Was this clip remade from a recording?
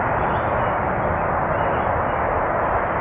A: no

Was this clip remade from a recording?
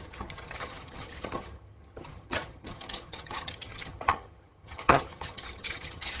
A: yes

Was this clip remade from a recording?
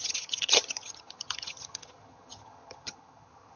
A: yes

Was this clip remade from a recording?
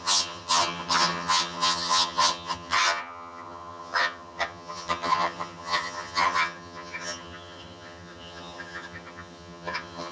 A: yes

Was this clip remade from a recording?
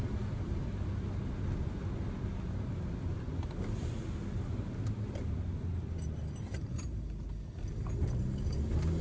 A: no